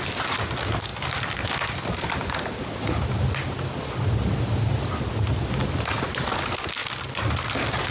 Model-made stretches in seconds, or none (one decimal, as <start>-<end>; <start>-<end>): none